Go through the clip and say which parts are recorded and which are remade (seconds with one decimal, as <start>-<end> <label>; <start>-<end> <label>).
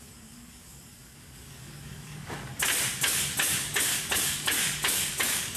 0.0-2.5 remade; 2.5-3.0 recorded; 3.0-5.6 remade